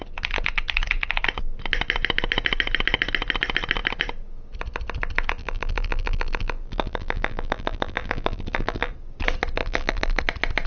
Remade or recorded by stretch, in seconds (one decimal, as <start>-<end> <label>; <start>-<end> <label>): 0.0-5.4 recorded; 5.4-8.9 remade; 8.9-9.6 recorded; 9.6-10.2 remade; 10.2-10.7 recorded